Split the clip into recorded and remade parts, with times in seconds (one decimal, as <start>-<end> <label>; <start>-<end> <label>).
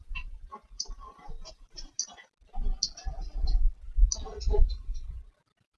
0.0-0.5 recorded; 0.5-2.0 remade; 2.0-5.8 recorded